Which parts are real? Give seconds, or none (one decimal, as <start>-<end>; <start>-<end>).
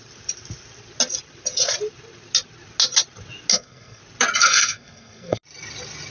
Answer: 0.0-3.5; 4.0-4.4; 5.4-6.1